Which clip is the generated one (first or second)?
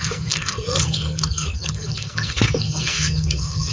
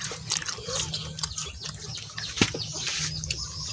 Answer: first